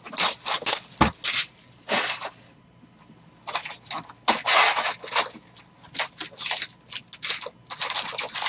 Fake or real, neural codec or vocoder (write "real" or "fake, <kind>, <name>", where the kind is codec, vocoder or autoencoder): real